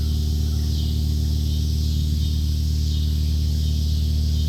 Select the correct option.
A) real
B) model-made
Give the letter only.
A